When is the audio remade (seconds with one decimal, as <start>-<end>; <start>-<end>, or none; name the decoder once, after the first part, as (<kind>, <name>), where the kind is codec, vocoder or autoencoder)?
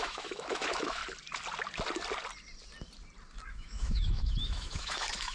0.0-1.0 (autoencoder, DAC-VAE); 3.5-5.3